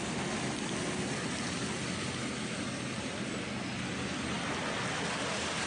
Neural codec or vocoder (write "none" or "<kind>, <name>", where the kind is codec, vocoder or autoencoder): none